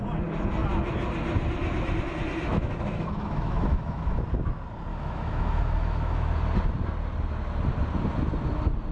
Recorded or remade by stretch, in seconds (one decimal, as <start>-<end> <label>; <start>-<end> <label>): 0.0-2.5 recorded; 2.5-4.2 remade; 4.2-4.9 recorded; 4.9-6.3 remade; 6.3-8.9 recorded